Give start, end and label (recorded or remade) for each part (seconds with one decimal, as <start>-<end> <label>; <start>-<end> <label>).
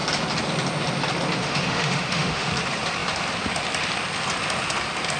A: 0.0-1.4 recorded; 1.4-2.5 remade; 2.5-5.2 recorded